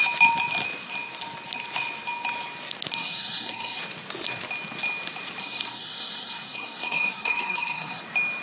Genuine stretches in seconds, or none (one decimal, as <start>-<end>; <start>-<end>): 0.0-3.0; 3.8-5.4; 8.0-8.4